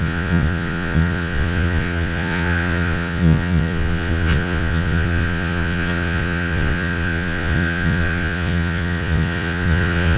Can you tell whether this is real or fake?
fake